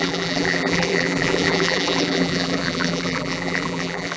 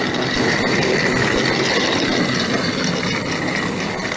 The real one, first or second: second